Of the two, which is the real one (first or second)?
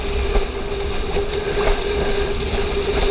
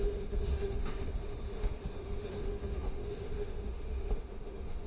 first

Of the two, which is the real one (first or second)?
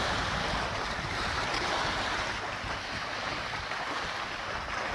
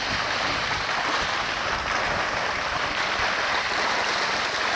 second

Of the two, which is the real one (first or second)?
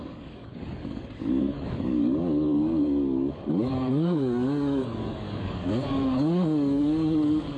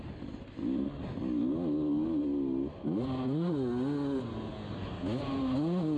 second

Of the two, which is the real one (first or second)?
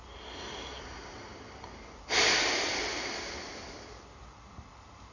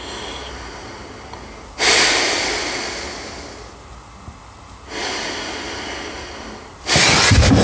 second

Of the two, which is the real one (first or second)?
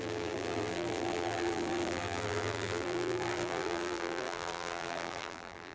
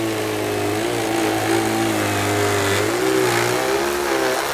second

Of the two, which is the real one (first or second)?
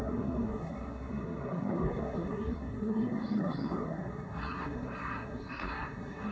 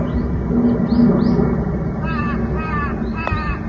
second